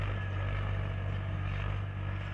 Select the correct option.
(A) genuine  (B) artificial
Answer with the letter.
A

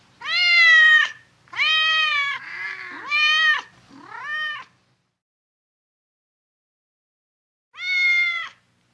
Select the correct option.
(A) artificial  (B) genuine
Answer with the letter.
B